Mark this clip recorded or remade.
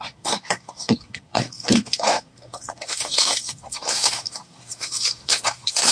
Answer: remade